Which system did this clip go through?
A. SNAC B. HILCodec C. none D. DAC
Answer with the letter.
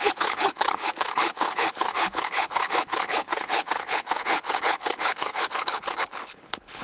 B